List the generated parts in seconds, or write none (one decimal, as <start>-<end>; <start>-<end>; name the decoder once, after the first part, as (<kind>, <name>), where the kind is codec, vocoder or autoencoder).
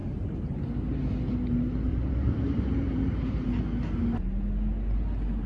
0.0-0.6 (vocoder, BigVGAN v2); 1.9-3.5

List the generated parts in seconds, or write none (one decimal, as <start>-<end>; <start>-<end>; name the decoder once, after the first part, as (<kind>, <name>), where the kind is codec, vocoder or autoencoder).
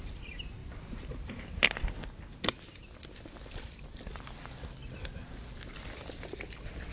none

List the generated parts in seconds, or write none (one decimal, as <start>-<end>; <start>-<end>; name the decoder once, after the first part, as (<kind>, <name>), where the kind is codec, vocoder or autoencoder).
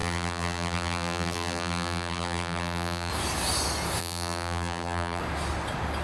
0.0-3.1 (vocoder, BigVGAN v2); 4.0-5.2